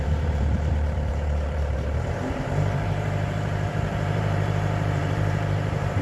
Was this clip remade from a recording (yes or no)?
yes